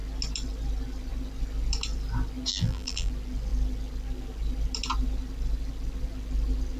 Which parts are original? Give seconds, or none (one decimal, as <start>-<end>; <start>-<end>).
0.0-2.5; 3.1-6.8